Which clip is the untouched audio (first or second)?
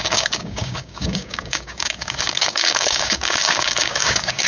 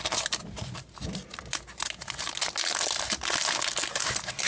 second